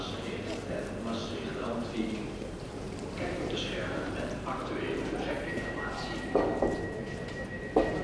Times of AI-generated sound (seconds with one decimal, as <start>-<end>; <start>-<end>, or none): 1.2-5.9